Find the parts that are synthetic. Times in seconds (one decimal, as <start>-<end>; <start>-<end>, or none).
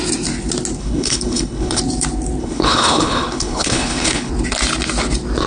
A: 0.8-1.8; 2.4-4.3